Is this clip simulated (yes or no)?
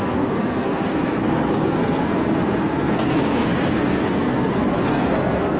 yes